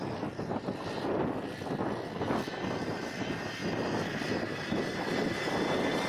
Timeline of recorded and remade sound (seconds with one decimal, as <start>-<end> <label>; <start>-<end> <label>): 0.0-6.1 recorded